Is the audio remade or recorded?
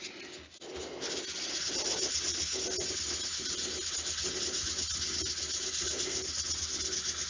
recorded